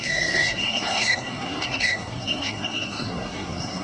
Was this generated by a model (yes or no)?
yes